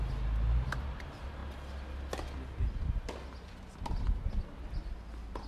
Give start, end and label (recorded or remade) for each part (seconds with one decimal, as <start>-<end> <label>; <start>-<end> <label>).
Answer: 0.0-5.5 recorded